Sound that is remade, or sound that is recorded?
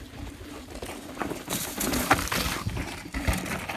recorded